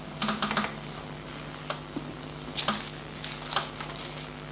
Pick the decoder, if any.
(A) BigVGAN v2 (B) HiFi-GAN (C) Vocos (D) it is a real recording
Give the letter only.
D